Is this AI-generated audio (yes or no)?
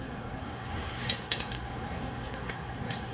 yes